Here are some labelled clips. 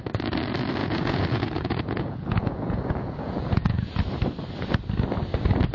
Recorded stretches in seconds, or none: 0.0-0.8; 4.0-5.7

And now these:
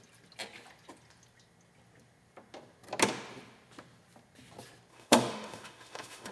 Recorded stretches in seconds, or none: 0.0-4.9

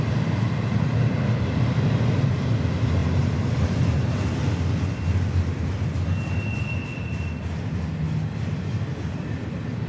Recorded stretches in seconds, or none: 0.0-9.9

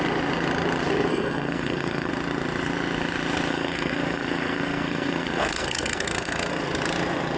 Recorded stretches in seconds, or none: 0.0-1.1; 2.1-3.5; 6.6-7.4